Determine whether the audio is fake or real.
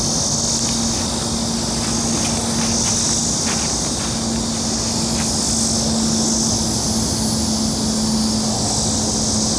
real